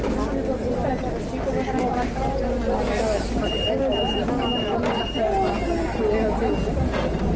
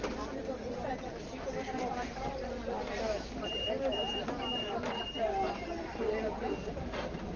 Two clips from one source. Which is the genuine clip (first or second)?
first